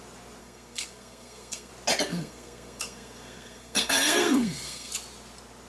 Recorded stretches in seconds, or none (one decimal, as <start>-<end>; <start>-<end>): 0.0-0.4; 1.7-2.1; 4.9-5.7